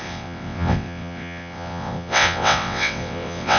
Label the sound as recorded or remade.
remade